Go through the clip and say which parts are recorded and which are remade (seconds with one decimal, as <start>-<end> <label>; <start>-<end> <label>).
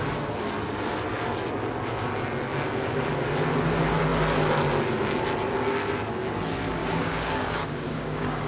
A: 0.0-6.8 recorded; 6.8-8.5 remade